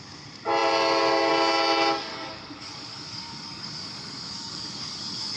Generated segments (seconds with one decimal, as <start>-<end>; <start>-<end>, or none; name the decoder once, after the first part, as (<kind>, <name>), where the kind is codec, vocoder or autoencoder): 2.1-5.4 (codec, DAC)